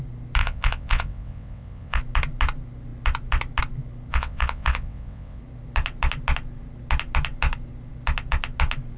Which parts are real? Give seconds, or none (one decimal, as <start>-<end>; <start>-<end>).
0.0-0.4; 2.0-4.1; 5.4-9.0